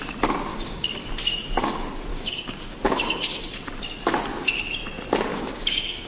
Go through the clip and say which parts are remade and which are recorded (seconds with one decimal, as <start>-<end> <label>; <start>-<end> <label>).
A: 0.0-0.5 recorded; 0.5-1.1 remade; 1.1-2.1 recorded; 2.1-3.4 remade; 3.4-5.3 recorded; 5.3-6.1 remade